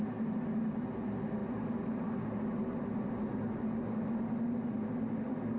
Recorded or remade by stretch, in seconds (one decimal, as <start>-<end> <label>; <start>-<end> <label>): 0.0-5.6 recorded